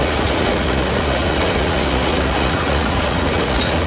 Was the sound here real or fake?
fake